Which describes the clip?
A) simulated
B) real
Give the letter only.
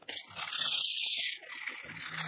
B